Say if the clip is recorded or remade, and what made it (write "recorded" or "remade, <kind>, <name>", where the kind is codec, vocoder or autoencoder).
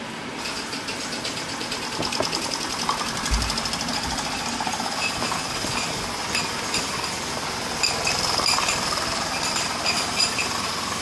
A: recorded